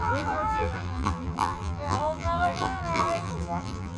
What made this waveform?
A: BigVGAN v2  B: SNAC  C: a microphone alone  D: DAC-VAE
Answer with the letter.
A